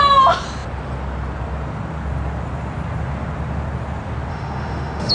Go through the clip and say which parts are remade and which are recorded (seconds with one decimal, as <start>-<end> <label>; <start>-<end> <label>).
0.0-4.3 recorded; 4.3-5.1 remade